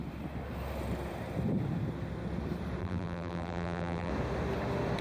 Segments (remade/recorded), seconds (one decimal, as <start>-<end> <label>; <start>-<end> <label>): 0.0-2.8 recorded; 2.8-4.1 remade; 4.1-5.0 recorded